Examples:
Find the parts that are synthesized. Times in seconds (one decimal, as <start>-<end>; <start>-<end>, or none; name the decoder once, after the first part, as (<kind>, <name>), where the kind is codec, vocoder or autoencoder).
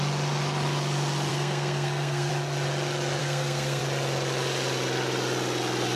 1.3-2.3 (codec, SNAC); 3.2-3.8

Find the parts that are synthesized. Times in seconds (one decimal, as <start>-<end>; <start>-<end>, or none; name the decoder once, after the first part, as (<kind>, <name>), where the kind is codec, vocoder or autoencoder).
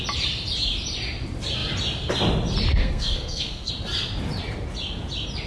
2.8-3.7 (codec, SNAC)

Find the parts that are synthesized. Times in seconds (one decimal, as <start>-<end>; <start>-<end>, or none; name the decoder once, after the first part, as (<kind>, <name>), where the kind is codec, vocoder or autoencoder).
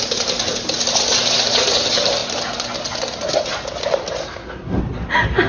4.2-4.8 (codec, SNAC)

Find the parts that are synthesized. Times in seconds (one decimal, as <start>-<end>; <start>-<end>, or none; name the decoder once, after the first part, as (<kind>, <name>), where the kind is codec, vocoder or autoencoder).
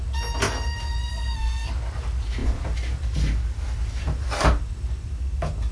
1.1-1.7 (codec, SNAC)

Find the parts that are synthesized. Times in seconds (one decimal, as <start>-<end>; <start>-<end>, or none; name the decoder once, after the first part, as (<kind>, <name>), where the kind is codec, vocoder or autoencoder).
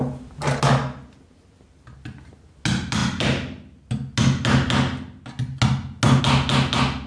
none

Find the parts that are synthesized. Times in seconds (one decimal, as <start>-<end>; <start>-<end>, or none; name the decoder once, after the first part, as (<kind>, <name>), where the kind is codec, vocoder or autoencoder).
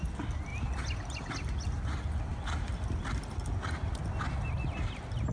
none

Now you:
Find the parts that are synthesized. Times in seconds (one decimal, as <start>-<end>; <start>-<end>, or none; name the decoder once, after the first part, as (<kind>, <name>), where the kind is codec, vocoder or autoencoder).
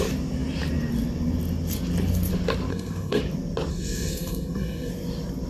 2.7-3.2 (codec, SNAC); 3.7-4.9